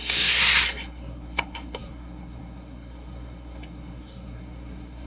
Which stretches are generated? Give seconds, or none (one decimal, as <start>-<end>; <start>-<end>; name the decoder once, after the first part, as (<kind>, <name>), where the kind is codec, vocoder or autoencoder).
0.0-5.1 (codec, SNAC)